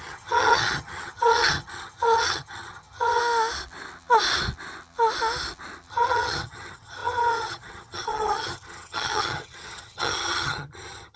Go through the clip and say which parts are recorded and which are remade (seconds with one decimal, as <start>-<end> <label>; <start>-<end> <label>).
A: 0.0-3.2 remade; 3.2-5.9 recorded; 5.9-11.2 remade